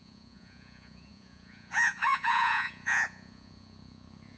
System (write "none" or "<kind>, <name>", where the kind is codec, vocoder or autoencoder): vocoder, Vocos